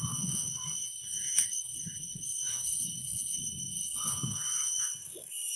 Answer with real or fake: fake